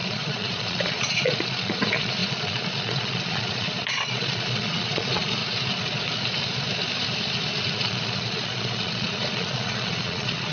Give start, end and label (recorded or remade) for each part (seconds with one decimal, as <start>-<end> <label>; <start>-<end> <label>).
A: 0.0-5.4 remade; 5.4-7.7 recorded; 7.7-10.5 remade